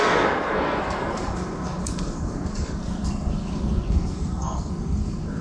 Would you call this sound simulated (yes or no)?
yes